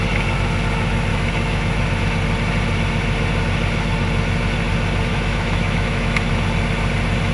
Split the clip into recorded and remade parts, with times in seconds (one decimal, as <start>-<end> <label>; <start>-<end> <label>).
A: 0.0-1.1 recorded; 1.1-2.0 remade; 2.0-5.1 recorded; 5.1-6.3 remade; 6.3-7.3 recorded